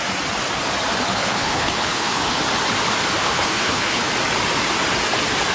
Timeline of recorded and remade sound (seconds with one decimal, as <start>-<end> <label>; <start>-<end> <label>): 0.0-1.1 recorded; 1.1-2.4 remade; 2.4-3.2 recorded; 3.2-4.1 remade; 4.1-5.5 recorded